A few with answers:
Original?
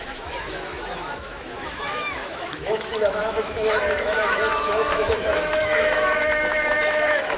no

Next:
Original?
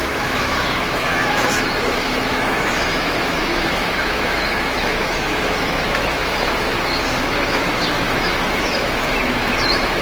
no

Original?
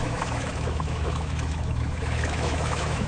no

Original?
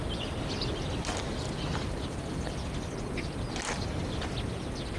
yes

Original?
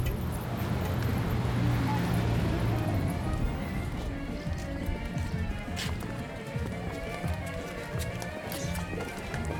yes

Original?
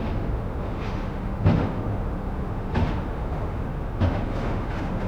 no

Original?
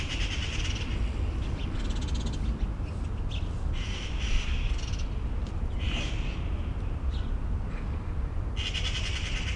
yes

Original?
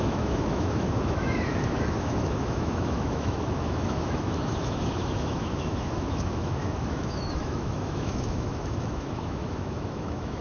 no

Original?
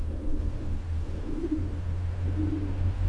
no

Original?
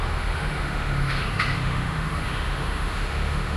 no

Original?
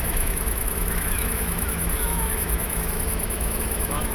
no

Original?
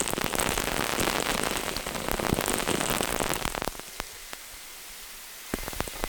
yes